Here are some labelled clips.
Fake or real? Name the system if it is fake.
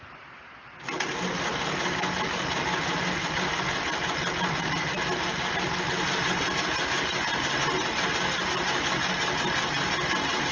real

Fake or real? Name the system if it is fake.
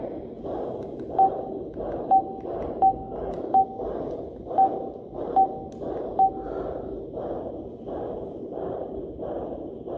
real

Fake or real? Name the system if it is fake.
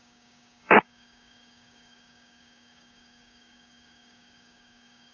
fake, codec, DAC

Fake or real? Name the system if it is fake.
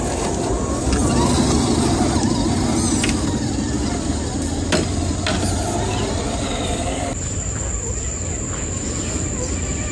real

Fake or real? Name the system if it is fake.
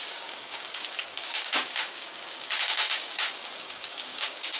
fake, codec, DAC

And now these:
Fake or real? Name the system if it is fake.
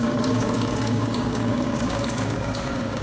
fake, codec, DAC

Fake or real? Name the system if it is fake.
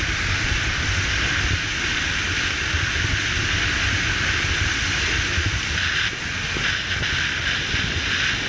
real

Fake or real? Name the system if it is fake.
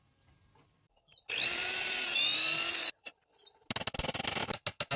real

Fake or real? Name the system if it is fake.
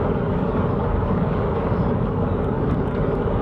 fake, codec, DAC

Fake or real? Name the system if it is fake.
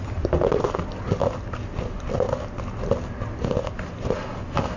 real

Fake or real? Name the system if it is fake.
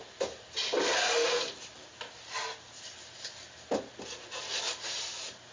real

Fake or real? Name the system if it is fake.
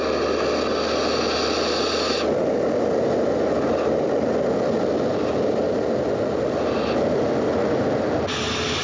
real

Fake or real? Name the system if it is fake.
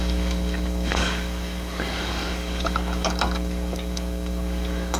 fake, codec, DAC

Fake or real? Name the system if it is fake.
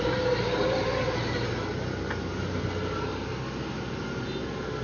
real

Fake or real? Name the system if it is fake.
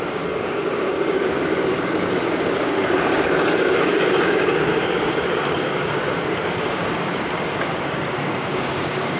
fake, codec, DAC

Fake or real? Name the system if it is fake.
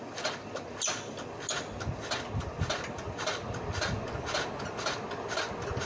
real